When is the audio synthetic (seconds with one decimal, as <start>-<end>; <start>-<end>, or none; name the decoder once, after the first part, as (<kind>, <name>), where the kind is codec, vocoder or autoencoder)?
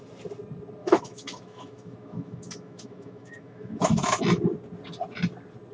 0.8-4.2 (autoencoder, DAC-VAE)